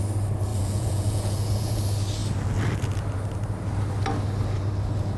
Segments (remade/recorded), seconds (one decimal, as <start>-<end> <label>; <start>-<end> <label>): 0.0-0.5 recorded; 0.5-1.8 remade; 1.8-5.2 recorded